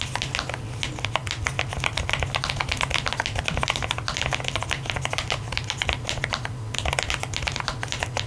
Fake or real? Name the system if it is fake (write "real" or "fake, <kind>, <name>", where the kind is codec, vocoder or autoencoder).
real